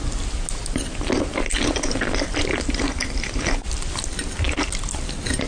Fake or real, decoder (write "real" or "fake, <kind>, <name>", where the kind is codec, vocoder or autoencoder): real